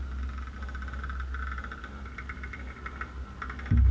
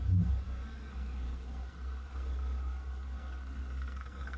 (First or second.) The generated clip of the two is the second